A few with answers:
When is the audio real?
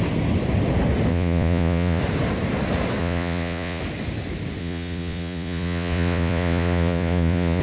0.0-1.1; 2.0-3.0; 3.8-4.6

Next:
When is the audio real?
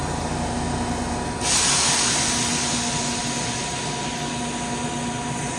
0.0-5.6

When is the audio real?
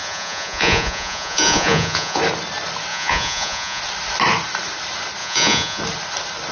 2.2-2.9; 3.8-5.2; 5.8-6.5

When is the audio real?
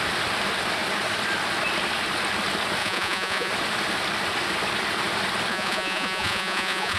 0.0-2.8; 3.5-5.5